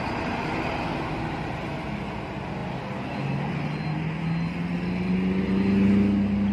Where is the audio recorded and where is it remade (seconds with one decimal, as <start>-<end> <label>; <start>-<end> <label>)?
0.0-6.5 recorded